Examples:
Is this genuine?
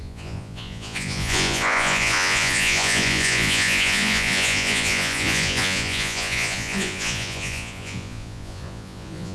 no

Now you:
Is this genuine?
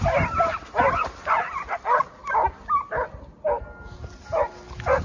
yes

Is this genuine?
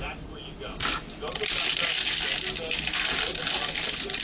yes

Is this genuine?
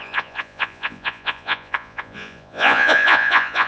no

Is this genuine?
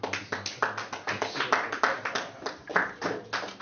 yes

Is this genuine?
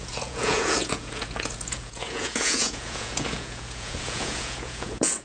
no